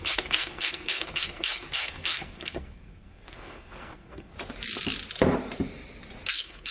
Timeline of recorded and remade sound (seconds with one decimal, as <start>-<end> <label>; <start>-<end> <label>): 0.0-4.3 remade; 4.3-6.3 recorded; 6.3-6.7 remade